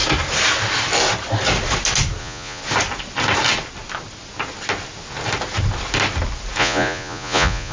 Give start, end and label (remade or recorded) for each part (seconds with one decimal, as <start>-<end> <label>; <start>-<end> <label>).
0.0-2.2 recorded; 2.2-2.6 remade; 2.6-6.6 recorded; 6.6-7.7 remade

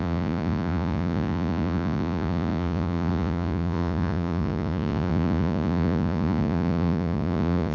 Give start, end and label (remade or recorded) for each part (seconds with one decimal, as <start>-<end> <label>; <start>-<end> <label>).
0.0-7.7 remade

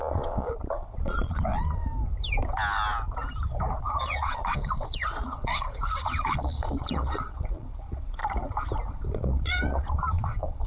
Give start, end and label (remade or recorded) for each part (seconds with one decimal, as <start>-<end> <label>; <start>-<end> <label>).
0.0-1.9 remade; 1.9-3.9 recorded; 3.9-8.2 remade; 8.2-8.9 recorded; 8.9-10.7 remade

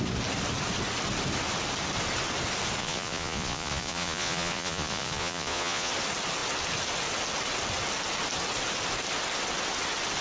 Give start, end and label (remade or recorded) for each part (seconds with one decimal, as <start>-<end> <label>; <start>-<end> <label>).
0.0-2.8 recorded; 2.8-5.9 remade; 5.9-10.2 recorded

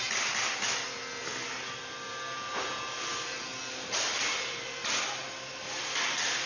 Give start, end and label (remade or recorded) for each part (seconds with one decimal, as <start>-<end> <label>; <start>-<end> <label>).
0.0-6.5 recorded

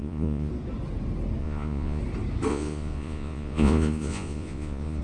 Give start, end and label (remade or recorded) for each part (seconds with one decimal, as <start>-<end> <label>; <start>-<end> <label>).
0.0-0.5 remade; 0.5-1.4 recorded; 1.4-2.0 remade; 2.0-2.5 recorded; 2.5-5.0 remade

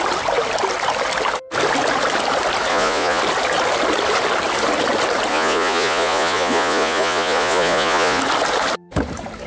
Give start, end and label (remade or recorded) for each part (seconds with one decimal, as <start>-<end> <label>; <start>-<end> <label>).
0.0-2.7 recorded; 2.7-3.2 remade; 3.2-5.3 recorded; 5.3-8.2 remade; 8.2-9.5 recorded

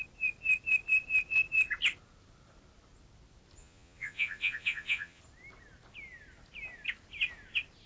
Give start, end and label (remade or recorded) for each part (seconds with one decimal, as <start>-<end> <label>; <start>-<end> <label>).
0.0-3.6 recorded; 3.6-5.2 remade; 5.2-7.9 recorded